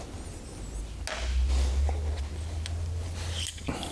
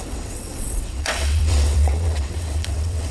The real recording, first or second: first